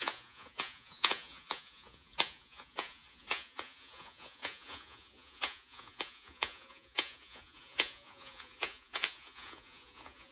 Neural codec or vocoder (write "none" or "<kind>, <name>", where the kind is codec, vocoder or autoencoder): vocoder, Vocos